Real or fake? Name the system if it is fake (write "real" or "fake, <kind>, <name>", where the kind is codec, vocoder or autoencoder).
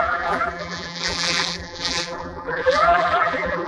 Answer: fake, vocoder, BigVGAN v2